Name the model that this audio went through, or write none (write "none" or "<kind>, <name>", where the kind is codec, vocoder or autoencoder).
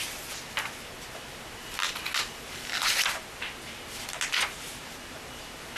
none